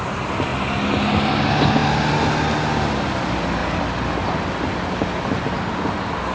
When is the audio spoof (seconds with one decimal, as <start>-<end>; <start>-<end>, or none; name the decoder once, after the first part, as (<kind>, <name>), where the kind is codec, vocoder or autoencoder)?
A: none